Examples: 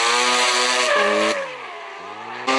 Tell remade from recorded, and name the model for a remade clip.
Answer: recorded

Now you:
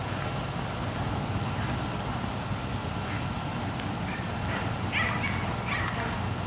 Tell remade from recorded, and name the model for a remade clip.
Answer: recorded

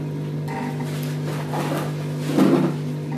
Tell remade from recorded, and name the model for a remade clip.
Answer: recorded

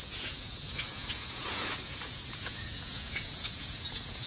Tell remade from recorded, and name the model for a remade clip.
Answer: remade, vocoder, Vocos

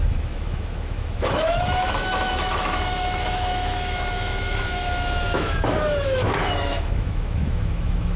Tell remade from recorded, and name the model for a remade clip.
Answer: remade, autoencoder, DAC-VAE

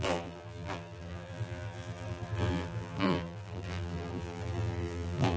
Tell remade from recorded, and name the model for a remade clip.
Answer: remade, vocoder, BigVGAN v2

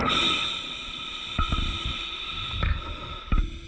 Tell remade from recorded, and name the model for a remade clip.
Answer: recorded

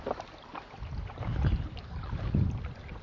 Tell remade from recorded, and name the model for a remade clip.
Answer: recorded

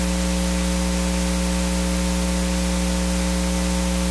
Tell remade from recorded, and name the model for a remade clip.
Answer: recorded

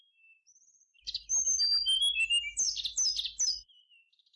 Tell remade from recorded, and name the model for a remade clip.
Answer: recorded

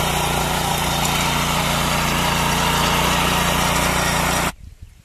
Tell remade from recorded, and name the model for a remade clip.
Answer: recorded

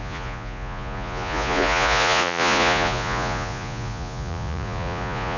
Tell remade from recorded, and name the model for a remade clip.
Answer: remade, vocoder, Vocos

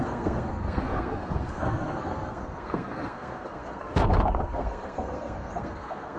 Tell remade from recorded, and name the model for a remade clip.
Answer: remade, codec, SNAC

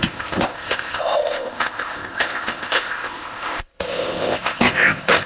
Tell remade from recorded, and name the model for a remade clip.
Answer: remade, codec, ZipCodec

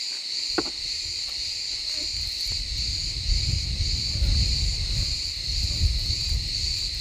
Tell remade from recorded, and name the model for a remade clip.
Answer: remade, vocoder, BigVGAN v2